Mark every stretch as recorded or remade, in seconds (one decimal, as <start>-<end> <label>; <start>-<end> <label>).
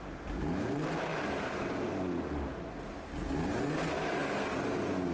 0.0-5.1 recorded